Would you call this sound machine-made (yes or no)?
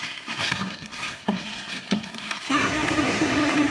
yes